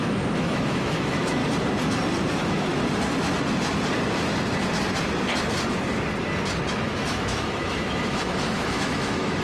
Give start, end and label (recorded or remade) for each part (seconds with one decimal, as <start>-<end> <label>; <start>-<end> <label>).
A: 0.0-1.4 remade; 1.4-2.3 recorded; 2.3-2.7 remade; 2.7-6.7 recorded; 6.7-9.4 remade